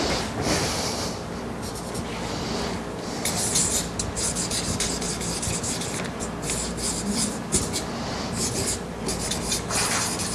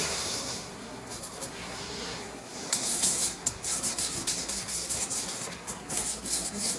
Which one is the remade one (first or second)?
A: second